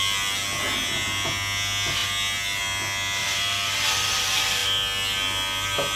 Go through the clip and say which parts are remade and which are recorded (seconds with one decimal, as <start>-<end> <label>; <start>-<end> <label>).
0.0-6.0 recorded